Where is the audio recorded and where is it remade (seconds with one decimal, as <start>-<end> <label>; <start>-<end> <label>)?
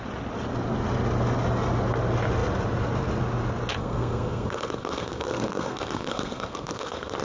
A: 0.0-3.8 recorded; 3.8-7.2 remade